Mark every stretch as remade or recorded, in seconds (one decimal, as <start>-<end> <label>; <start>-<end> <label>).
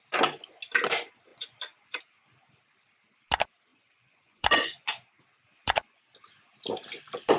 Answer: 0.0-1.3 recorded; 1.3-2.0 remade; 2.0-3.7 recorded; 3.7-4.9 remade; 4.9-5.5 recorded; 5.5-6.0 remade; 6.0-7.4 recorded